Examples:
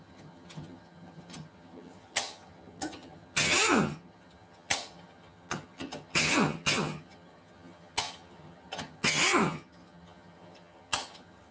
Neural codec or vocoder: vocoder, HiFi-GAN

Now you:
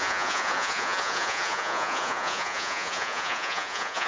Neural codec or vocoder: vocoder, Vocos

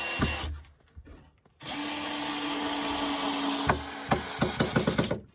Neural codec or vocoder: none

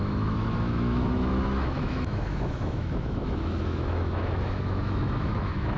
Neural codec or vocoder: autoencoder, DAC-VAE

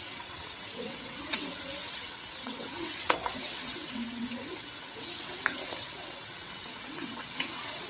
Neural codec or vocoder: vocoder, WaveNeXt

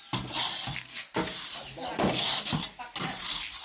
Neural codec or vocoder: none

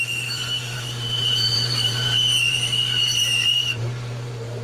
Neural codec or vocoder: vocoder, BigVGAN v2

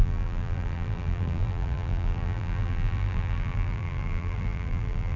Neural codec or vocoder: vocoder, BigVGAN v2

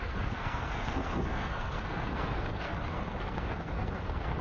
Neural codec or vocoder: codec, SNAC